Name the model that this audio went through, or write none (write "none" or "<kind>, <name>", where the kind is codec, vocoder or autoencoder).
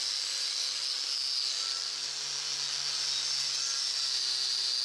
none